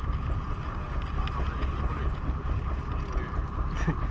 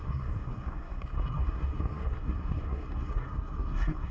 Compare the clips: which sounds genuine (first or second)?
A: first